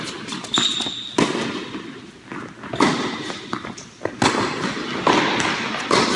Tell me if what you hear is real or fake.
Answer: real